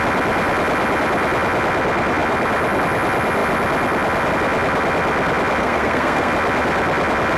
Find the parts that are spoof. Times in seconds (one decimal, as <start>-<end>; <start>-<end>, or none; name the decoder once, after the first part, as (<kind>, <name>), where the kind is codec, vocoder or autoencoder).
5.6-6.3 (codec, SNAC)